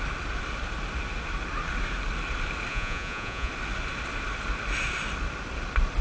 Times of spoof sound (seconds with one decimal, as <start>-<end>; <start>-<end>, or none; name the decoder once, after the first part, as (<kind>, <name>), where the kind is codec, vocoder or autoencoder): 2.7-3.5 (vocoder, Vocos)